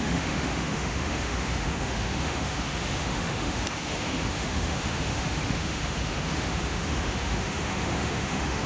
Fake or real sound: fake